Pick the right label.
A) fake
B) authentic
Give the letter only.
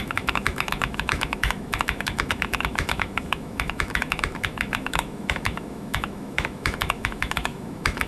A